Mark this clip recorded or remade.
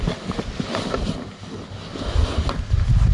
recorded